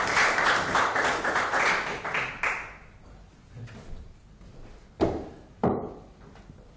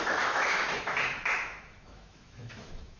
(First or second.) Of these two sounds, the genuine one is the first